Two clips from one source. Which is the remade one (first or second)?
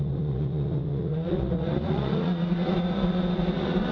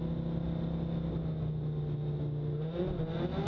first